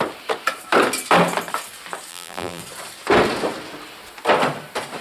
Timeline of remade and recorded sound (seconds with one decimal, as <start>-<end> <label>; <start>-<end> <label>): 0.0-2.1 recorded; 2.1-2.6 remade; 2.6-5.0 recorded